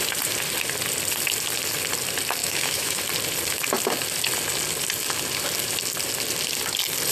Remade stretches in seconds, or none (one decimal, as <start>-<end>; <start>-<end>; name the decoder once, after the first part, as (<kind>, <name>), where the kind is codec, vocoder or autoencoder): 2.4-3.0 (autoencoder, DAC-VAE)